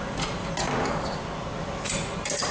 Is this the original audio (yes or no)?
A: yes